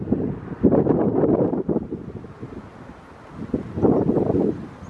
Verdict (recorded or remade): recorded